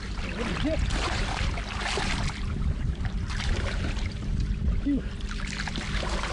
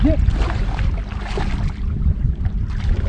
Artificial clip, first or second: first